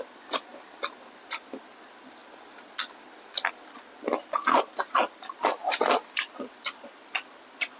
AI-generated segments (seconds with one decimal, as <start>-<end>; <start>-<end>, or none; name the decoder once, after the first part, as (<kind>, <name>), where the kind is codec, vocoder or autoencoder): none

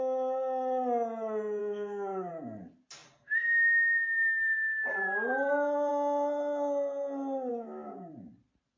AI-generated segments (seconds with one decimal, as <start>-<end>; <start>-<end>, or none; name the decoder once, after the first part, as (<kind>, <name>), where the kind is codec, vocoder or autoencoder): 1.6-2.3 (codec, DAC); 7.5-8.1

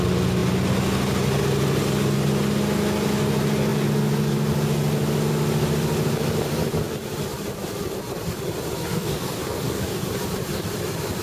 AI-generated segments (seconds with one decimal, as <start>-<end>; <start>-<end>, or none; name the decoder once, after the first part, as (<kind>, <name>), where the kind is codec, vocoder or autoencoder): 8.9-10.0 (codec, DAC)